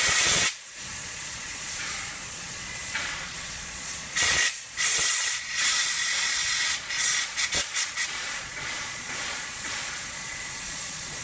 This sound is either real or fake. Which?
fake